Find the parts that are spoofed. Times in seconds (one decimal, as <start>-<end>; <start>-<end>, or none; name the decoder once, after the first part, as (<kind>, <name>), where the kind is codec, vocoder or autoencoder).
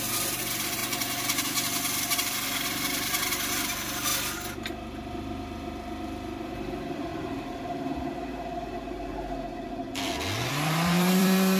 0.0-0.8 (vocoder, BigVGAN v2); 2.1-4.1; 5.1-7.1; 10.5-11.6